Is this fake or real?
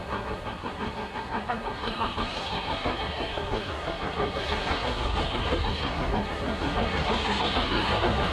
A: fake